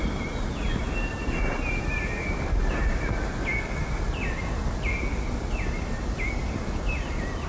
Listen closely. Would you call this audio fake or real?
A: real